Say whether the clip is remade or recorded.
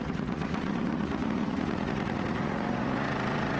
remade